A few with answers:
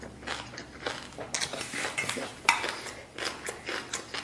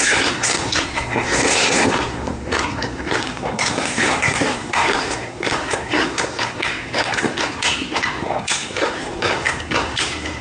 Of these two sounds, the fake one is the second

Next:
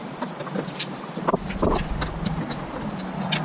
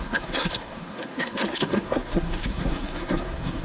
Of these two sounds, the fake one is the second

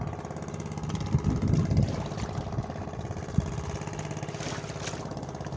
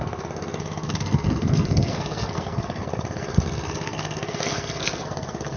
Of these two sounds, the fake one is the second